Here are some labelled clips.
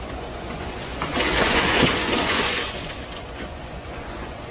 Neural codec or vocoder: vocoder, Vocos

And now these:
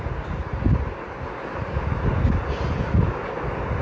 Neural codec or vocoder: none